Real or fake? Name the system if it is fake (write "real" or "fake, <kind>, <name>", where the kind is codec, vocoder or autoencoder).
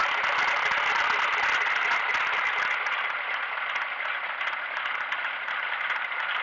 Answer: real